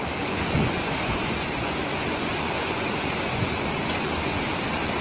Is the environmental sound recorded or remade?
remade